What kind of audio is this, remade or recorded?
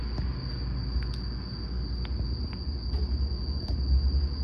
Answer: recorded